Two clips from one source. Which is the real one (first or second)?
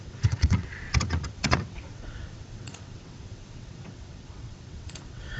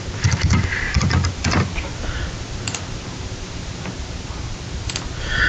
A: second